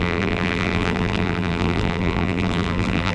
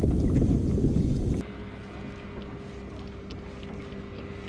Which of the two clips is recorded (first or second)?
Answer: second